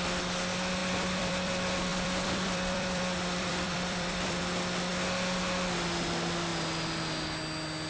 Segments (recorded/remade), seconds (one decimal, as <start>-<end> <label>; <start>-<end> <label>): 0.0-0.8 recorded; 0.8-1.5 remade; 1.5-1.9 recorded; 1.9-4.4 remade; 4.4-7.9 recorded